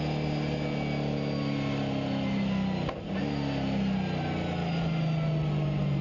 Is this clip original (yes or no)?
yes